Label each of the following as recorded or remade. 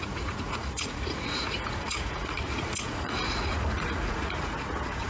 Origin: remade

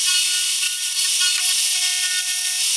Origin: recorded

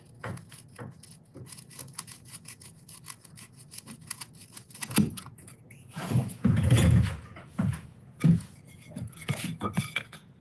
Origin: remade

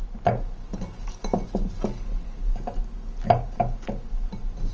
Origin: recorded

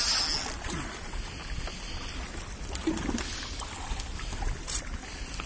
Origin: recorded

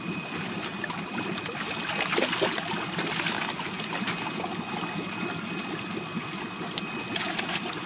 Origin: recorded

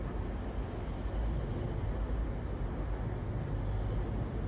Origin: recorded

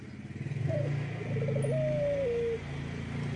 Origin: recorded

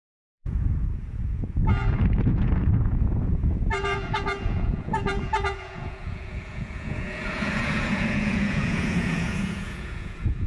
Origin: remade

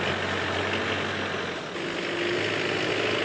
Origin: recorded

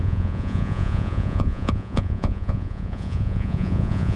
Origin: remade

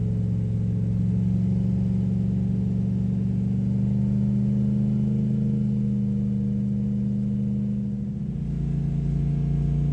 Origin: recorded